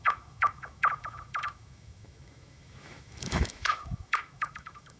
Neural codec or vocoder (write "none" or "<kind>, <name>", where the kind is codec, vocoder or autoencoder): autoencoder, DAC-VAE